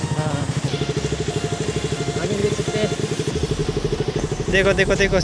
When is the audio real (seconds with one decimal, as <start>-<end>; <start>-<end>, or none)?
0.0-5.2